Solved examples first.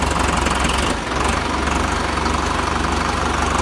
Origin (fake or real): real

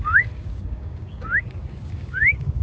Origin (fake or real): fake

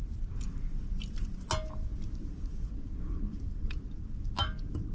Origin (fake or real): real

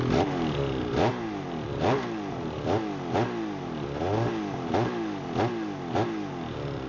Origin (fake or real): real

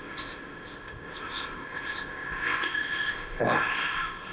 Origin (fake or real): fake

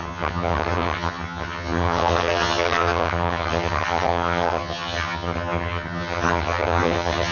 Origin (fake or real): fake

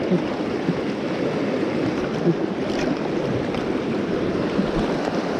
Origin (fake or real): fake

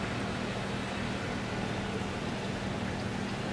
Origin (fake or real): real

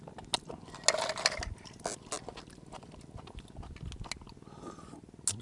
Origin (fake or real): real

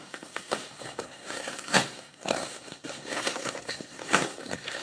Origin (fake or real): fake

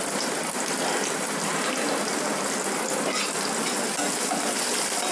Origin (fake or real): real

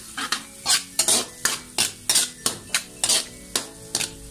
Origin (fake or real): real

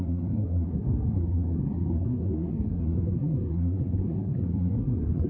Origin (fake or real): fake